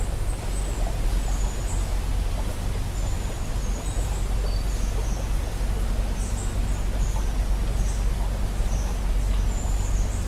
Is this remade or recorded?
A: recorded